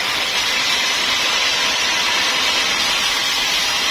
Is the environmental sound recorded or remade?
recorded